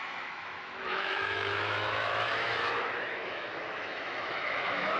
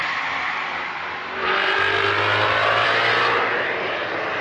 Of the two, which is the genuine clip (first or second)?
second